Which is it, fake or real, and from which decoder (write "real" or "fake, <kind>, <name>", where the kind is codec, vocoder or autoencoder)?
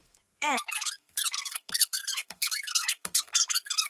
fake, codec, SNAC